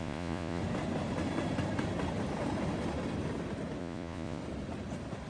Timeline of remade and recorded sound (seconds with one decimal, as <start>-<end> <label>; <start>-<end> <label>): 0.0-0.6 remade; 0.6-3.8 recorded; 3.8-4.4 remade; 4.4-5.3 recorded